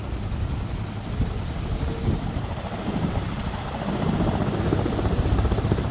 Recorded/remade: recorded